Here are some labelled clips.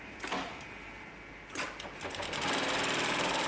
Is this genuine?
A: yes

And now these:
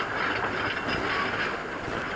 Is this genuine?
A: yes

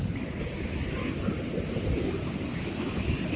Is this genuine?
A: yes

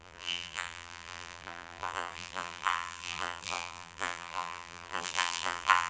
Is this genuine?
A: no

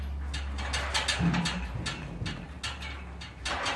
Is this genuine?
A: yes